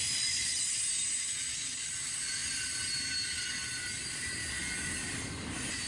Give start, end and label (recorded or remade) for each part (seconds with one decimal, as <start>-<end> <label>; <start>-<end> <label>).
0.0-5.9 recorded

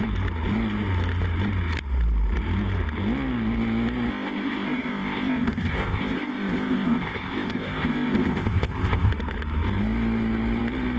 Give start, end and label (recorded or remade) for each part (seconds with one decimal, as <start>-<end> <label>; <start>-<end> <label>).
0.0-4.1 recorded; 4.1-9.1 remade; 9.1-11.0 recorded